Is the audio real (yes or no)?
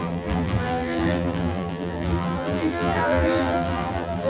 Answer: no